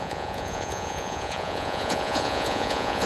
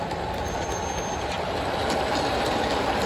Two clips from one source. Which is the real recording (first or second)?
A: second